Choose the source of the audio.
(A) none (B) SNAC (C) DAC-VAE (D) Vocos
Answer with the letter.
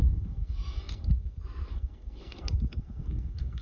B